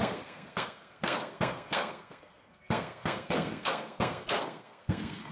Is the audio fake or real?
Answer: fake